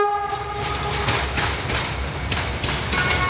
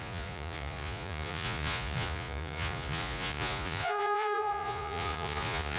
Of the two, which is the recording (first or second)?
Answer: first